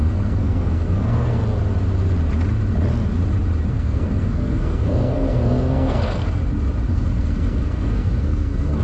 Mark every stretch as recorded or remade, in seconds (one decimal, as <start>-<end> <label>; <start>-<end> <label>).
0.0-1.4 remade; 1.4-3.7 recorded; 3.7-6.4 remade; 6.4-6.9 recorded; 6.9-8.8 remade